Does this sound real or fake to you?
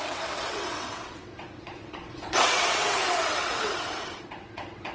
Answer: fake